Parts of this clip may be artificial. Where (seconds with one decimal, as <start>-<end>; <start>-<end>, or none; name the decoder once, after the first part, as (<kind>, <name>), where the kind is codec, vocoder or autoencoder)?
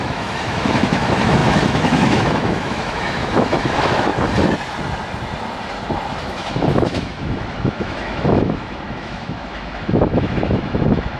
0.0-4.1 (autoencoder, DAC-VAE); 6.2-11.2